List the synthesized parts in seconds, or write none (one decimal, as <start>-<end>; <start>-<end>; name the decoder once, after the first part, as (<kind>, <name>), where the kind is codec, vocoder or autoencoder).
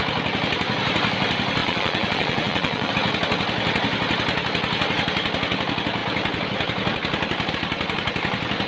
1.6-2.9 (vocoder, Vocos)